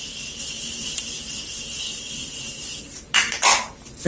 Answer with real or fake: real